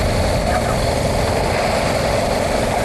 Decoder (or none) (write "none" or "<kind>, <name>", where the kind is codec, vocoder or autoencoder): none